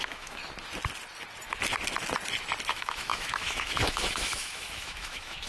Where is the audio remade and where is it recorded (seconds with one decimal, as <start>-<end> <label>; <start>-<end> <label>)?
0.0-0.4 remade; 0.4-2.7 recorded; 2.7-5.5 remade